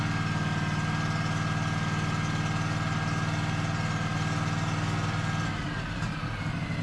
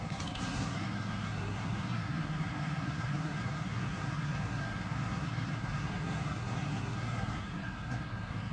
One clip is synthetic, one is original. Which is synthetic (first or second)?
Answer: second